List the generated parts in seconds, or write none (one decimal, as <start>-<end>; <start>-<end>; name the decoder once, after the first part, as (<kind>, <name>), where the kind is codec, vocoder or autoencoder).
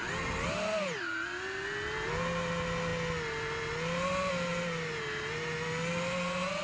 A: none